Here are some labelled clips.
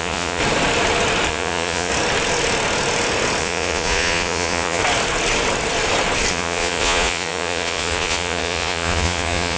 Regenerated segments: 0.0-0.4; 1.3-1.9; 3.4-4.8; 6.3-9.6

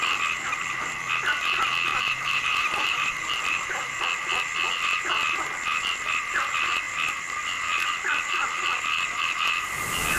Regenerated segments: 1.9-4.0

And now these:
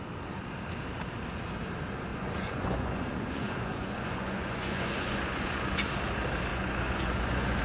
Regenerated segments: 2.1-5.9; 6.5-7.6

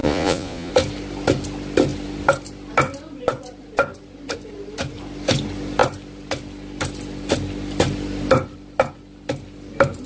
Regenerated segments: 0.0-0.7

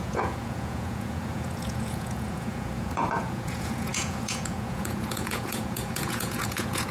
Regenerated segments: 0.0-6.9

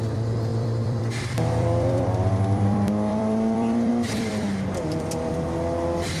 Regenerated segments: 0.0-6.2

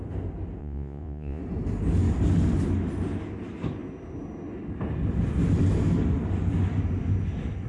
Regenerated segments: 0.6-1.4